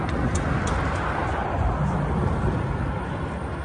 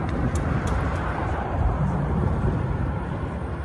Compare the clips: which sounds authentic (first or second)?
first